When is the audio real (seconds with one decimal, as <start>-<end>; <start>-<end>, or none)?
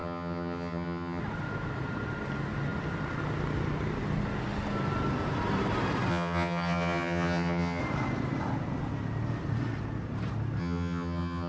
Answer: 1.2-6.1; 7.8-10.6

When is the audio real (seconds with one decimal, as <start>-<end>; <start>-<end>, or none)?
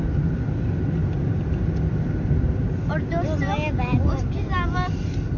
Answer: 0.0-5.4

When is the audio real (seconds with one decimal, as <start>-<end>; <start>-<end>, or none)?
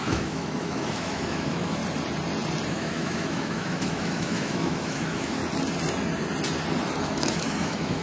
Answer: 1.8-2.7; 5.4-7.0